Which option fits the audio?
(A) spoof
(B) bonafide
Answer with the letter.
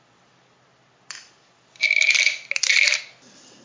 B